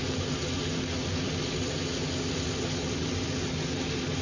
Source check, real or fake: real